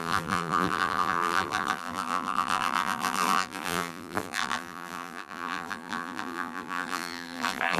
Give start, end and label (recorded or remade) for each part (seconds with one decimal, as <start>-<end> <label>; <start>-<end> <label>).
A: 0.0-7.8 remade